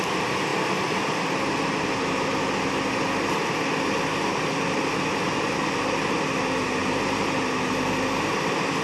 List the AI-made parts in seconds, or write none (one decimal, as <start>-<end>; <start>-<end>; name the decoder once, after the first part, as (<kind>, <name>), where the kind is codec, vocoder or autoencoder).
none